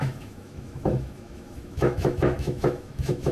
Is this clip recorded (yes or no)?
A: no